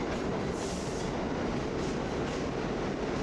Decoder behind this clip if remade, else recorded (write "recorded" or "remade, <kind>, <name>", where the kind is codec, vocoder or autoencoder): recorded